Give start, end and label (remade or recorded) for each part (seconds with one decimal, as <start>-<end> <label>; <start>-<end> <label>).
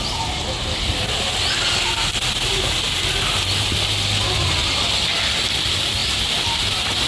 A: 0.0-7.1 recorded